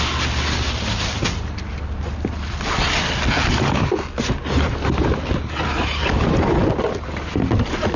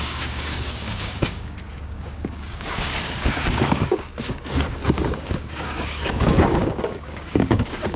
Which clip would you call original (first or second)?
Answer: first